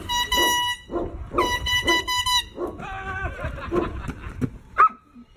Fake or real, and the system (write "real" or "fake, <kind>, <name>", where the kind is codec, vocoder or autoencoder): real